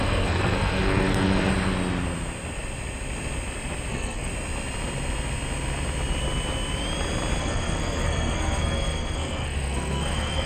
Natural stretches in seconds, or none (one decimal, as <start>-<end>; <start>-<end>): 1.5-3.9; 4.3-7.4